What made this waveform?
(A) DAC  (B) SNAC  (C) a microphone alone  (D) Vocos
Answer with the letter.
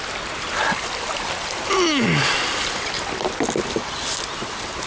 C